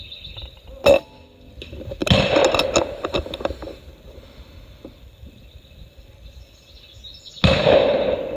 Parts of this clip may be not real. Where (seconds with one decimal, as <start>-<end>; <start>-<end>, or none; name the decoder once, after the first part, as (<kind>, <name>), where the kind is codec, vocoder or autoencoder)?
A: none